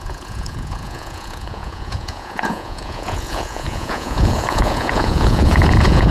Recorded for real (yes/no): no